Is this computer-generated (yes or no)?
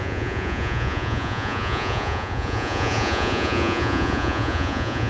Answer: yes